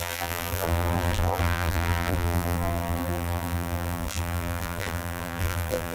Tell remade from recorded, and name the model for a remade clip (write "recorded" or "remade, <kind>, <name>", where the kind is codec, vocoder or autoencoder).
remade, vocoder, BigVGAN v2